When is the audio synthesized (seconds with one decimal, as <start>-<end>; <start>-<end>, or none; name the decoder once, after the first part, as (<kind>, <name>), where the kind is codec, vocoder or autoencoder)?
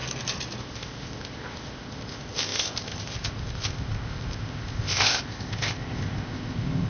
0.6-6.9 (codec, ZipCodec)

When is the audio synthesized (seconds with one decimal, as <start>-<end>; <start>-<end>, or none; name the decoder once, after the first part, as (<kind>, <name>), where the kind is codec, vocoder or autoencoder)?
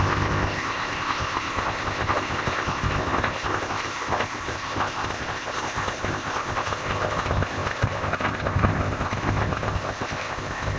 0.0-10.8 (codec, ZipCodec)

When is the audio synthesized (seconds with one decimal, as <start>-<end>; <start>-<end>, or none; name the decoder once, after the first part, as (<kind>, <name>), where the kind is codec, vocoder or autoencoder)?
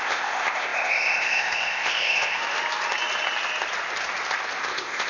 0.0-2.4 (codec, ZipCodec); 4.6-5.1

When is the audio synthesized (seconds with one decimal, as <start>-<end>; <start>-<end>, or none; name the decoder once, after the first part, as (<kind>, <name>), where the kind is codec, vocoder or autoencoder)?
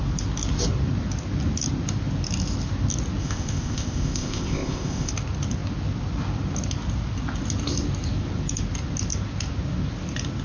3.2-5.1 (codec, ZipCodec)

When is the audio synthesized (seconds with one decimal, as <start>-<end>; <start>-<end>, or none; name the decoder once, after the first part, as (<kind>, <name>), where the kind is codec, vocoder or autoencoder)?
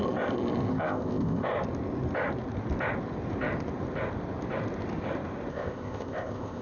0.7-1.5 (codec, ZipCodec); 5.5-6.6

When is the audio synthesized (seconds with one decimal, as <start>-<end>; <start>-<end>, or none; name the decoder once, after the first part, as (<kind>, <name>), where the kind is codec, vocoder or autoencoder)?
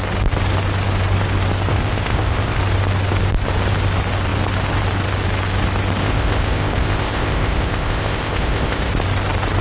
1.7-2.6 (codec, ZipCodec); 6.0-8.9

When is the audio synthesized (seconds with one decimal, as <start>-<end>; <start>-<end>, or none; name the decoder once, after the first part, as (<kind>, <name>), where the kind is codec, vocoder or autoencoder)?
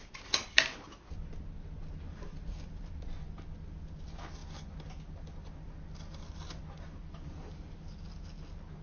none